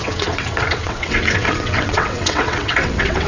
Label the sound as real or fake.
fake